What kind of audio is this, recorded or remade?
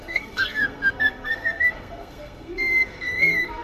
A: remade